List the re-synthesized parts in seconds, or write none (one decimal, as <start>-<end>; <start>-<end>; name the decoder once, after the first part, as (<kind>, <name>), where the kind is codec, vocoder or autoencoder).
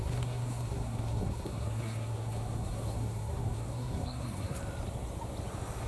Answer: 0.0-4.6 (codec, SNAC)